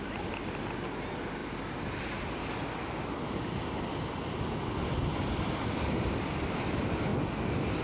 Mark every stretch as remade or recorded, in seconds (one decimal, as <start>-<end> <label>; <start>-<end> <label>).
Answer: 0.0-7.8 recorded